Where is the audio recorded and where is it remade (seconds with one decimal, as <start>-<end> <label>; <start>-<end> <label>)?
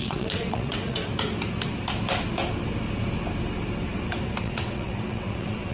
0.0-1.0 remade; 1.0-4.4 recorded; 4.4-5.7 remade